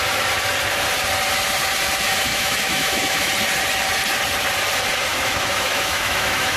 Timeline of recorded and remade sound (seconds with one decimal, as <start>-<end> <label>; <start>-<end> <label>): 0.0-2.3 recorded; 2.3-3.3 remade; 3.3-5.1 recorded; 5.1-6.6 remade